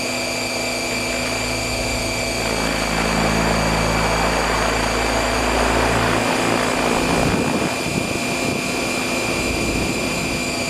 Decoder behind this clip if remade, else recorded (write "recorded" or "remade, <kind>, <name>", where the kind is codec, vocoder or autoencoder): recorded